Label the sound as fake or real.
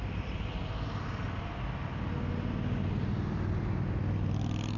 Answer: real